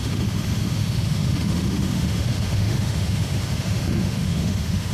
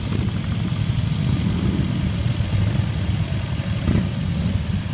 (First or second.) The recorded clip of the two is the second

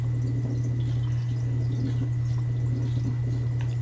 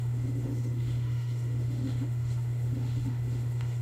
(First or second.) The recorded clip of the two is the first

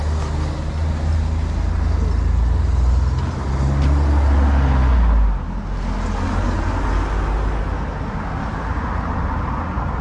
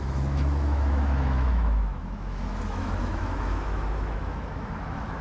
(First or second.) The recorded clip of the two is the first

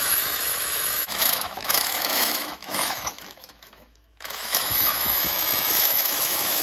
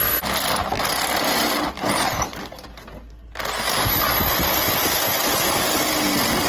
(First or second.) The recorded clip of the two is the second